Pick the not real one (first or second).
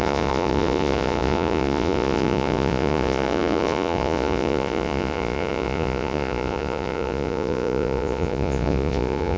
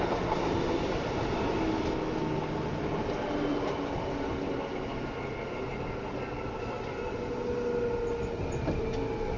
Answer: first